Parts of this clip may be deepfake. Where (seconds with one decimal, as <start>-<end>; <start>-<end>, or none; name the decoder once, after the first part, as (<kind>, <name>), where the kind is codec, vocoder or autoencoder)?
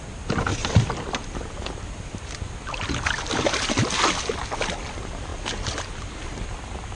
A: 0.5-2.1 (vocoder, BigVGAN v2)